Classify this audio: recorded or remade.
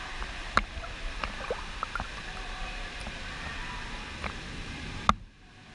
recorded